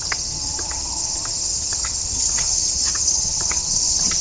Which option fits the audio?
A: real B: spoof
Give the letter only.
B